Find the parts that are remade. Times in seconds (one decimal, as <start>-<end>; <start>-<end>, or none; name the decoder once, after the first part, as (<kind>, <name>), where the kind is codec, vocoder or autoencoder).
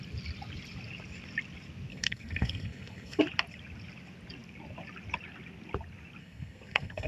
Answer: 1.9-3.2 (codec, SNAC); 6.2-7.1